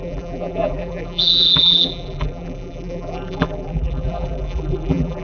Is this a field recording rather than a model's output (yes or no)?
no